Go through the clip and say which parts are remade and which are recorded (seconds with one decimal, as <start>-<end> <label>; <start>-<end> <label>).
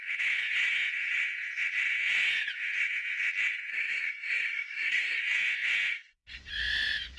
0.0-3.7 recorded; 3.7-5.2 remade; 5.2-5.9 recorded; 5.9-6.4 remade; 6.4-7.2 recorded